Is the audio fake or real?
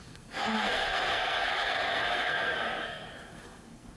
fake